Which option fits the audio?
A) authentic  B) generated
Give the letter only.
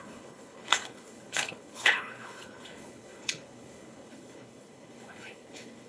B